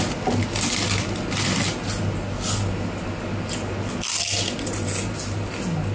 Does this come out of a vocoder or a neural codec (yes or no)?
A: no